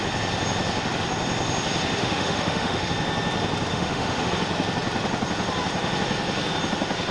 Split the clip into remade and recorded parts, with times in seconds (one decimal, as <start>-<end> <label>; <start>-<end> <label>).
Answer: 0.0-2.0 recorded; 2.0-2.9 remade; 2.9-3.7 recorded; 3.7-4.3 remade; 4.3-7.1 recorded